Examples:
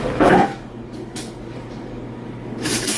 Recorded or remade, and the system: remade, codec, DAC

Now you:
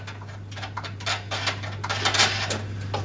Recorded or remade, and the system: recorded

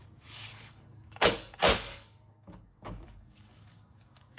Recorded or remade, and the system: remade, codec, DAC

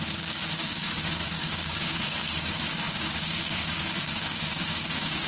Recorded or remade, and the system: remade, codec, DAC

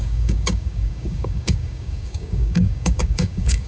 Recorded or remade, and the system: remade, codec, DAC